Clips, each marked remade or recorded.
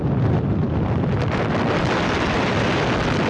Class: recorded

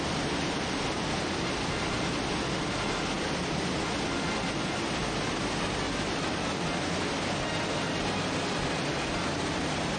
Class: recorded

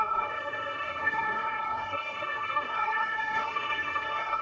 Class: remade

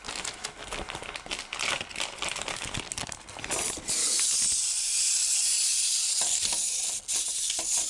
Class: recorded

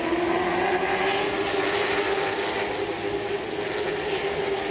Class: recorded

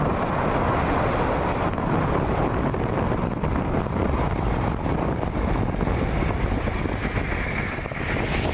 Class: recorded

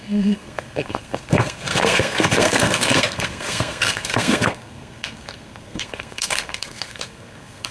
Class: remade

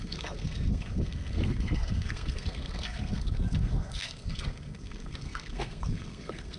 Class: remade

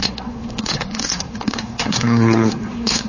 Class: remade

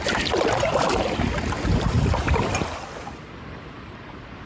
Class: recorded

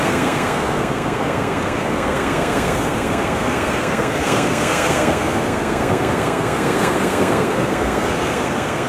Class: remade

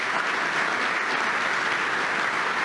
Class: recorded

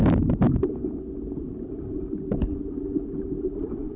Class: recorded